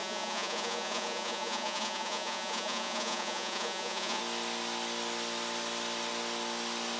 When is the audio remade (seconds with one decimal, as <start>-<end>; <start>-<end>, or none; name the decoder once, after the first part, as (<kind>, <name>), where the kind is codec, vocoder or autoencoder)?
0.0-4.2 (vocoder, Vocos)